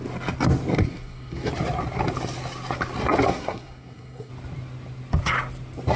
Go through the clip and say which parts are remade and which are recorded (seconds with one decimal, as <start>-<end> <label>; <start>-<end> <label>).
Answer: 0.0-0.7 recorded; 0.7-1.5 remade; 1.5-3.3 recorded; 3.3-4.3 remade; 4.3-6.0 recorded